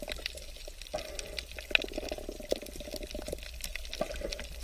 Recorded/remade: recorded